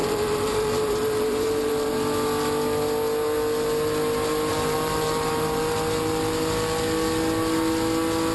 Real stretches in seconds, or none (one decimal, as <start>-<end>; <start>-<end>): 2.0-4.5; 5.6-8.3